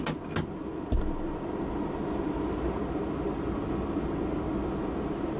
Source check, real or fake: real